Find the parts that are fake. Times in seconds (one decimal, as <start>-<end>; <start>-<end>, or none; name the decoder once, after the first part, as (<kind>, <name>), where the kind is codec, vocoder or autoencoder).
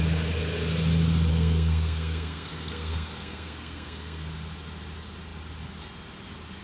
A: 1.3-4.3 (codec, SNAC)